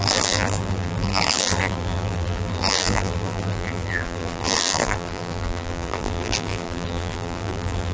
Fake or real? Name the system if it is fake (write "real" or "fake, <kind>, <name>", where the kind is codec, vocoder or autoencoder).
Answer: fake, vocoder, BigVGAN v2